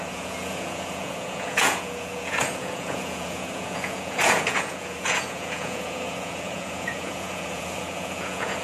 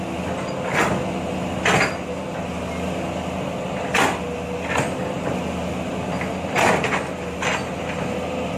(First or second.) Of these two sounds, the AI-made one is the first